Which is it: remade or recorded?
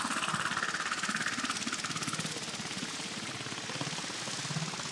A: recorded